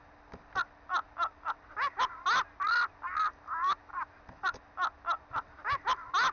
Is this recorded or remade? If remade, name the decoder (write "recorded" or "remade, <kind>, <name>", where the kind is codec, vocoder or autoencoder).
recorded